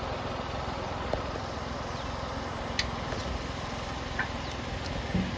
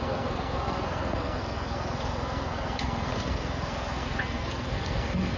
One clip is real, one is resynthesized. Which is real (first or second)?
first